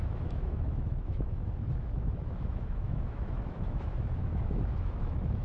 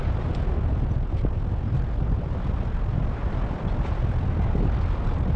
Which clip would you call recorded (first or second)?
second